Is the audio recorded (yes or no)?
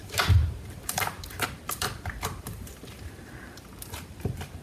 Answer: no